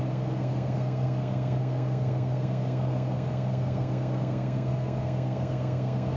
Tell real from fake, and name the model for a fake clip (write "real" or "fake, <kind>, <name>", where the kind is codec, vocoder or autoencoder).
fake, codec, SNAC